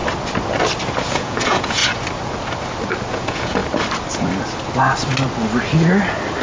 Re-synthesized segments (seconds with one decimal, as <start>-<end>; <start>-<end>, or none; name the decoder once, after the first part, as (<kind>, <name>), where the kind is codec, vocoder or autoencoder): 1.1-1.8 (vocoder, Vocos); 3.1-3.6